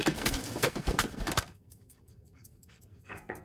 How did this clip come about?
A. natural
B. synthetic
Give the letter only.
B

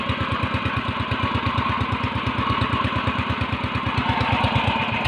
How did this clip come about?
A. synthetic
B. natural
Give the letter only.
B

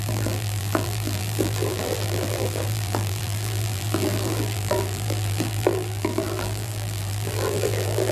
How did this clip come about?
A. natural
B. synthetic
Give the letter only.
B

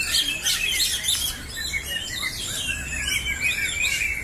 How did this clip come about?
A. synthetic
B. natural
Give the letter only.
A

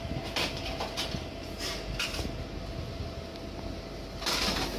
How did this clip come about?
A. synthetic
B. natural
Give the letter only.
B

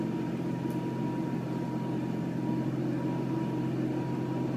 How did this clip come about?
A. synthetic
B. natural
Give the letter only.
B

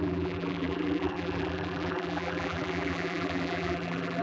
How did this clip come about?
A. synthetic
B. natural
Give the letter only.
A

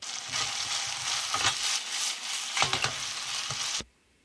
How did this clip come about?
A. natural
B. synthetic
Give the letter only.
A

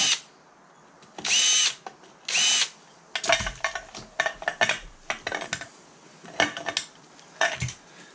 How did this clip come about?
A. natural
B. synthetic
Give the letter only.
A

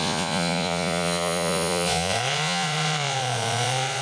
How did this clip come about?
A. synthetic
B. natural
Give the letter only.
A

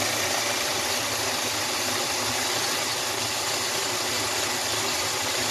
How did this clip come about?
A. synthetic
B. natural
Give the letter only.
B